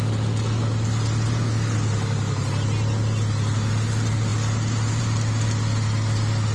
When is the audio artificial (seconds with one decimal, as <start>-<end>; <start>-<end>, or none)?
none

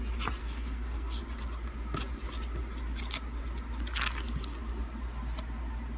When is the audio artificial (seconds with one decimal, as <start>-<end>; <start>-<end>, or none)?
0.4-1.2